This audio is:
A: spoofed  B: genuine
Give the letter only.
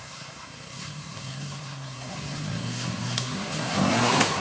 A